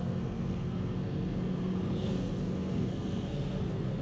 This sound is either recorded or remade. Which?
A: remade